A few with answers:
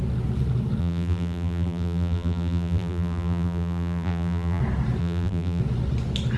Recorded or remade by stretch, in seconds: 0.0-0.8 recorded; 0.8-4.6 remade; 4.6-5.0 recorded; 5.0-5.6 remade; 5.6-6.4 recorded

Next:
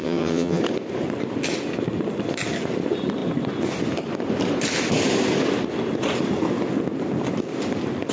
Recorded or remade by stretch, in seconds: 0.0-0.6 remade; 0.6-8.1 recorded